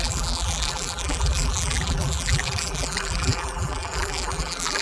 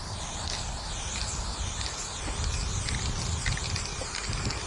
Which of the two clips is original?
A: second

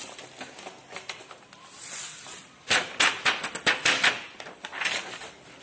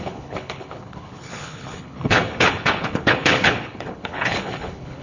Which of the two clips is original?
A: first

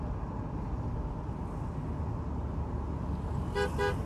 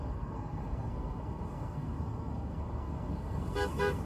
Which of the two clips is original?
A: first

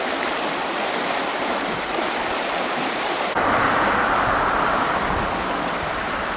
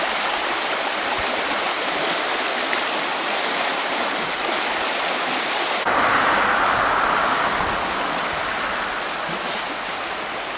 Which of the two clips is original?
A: second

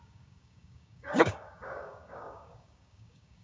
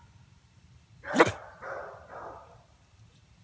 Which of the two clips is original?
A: second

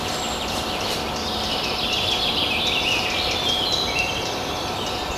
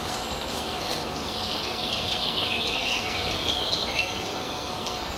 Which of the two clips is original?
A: first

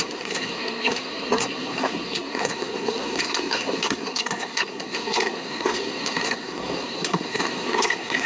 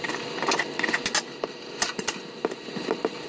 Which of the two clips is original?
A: second